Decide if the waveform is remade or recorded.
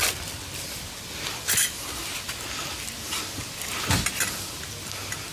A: recorded